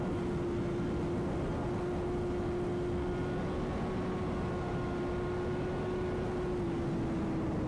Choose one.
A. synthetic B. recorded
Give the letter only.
B